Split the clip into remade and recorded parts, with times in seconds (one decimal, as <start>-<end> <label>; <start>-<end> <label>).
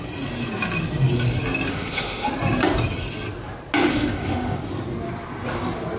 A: 0.0-1.7 recorded; 1.7-2.3 remade; 2.3-3.9 recorded; 3.9-4.6 remade; 4.6-6.0 recorded